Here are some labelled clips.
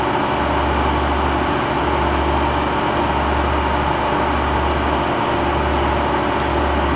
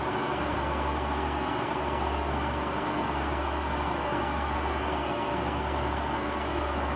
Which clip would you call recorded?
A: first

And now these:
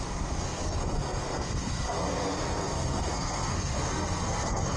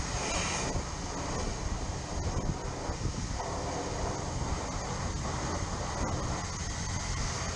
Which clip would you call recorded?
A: second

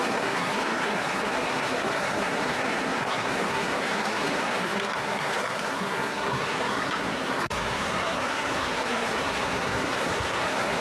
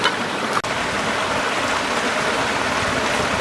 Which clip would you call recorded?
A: second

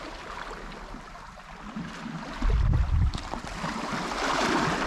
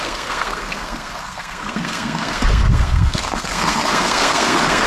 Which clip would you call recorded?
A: first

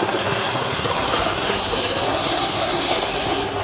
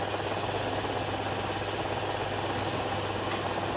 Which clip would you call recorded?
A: second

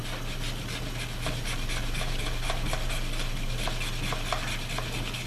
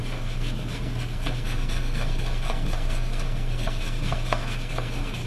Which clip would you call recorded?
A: first